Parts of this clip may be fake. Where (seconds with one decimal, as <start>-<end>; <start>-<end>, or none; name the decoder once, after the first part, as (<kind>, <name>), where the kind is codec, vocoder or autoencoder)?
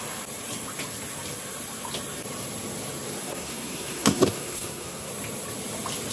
3.2-5.1 (codec, SNAC)